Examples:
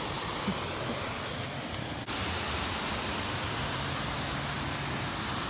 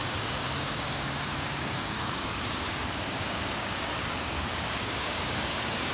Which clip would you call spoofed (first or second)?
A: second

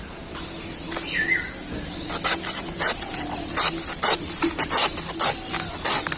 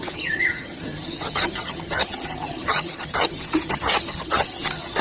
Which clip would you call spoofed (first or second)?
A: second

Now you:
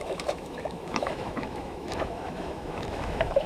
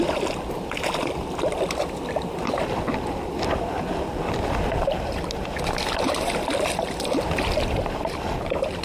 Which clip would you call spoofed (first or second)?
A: first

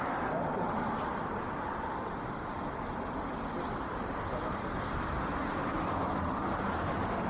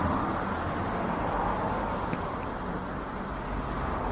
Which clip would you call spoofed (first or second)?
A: first